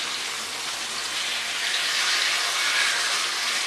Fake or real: real